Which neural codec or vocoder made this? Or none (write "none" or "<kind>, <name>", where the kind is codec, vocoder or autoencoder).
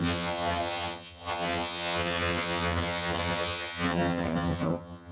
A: vocoder, HiFi-GAN